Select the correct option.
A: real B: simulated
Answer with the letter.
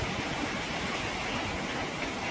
A